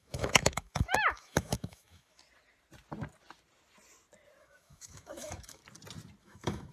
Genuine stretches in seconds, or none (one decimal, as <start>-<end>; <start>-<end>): 2.2-4.4; 5.6-6.2